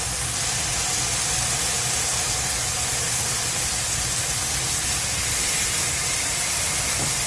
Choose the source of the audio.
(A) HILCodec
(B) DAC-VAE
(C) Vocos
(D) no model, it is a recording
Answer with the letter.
D